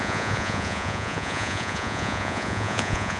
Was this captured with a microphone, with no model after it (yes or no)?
no